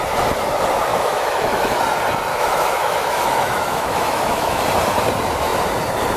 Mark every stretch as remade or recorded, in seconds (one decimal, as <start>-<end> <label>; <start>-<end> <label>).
0.0-0.9 recorded; 0.9-1.8 remade; 1.8-2.3 recorded; 2.3-4.6 remade; 4.6-6.2 recorded